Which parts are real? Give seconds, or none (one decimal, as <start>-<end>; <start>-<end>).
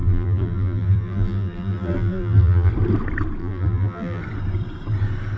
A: 2.7-3.4; 4.2-5.4